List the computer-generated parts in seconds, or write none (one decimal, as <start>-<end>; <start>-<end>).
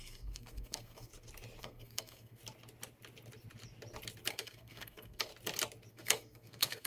0.0-1.1; 1.6-2.4; 4.3-5.3; 5.9-6.9